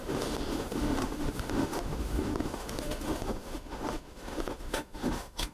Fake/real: fake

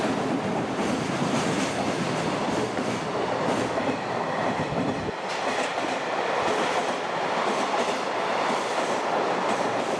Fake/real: fake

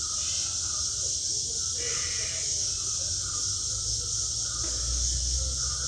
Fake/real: real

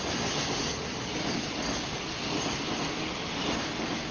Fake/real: real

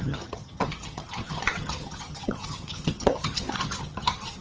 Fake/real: fake